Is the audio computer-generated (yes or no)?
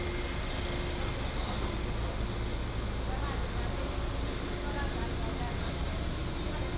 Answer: no